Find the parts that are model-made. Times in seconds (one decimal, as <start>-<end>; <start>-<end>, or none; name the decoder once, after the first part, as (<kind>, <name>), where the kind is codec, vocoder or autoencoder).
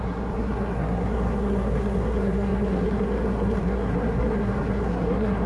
0.0-5.5 (codec, SNAC)